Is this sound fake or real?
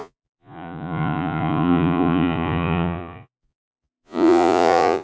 fake